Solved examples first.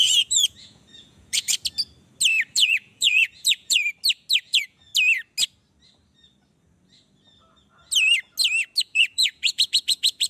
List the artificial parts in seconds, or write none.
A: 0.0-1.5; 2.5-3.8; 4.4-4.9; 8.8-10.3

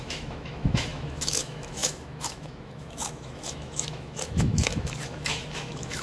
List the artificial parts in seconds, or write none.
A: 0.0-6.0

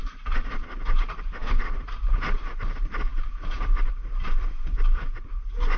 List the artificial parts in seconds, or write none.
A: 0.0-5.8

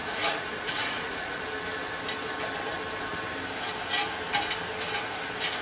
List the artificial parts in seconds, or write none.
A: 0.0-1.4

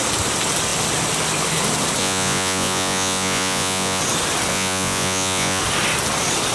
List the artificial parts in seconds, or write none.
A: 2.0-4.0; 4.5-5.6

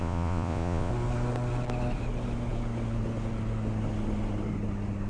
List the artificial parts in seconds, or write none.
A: 0.0-0.9

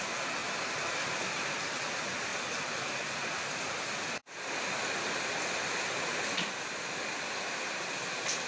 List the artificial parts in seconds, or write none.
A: none